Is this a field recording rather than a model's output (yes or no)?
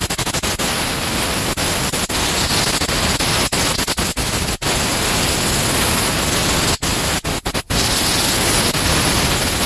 yes